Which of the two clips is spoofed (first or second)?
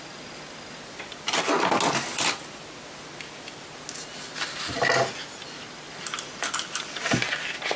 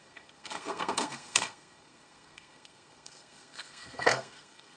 second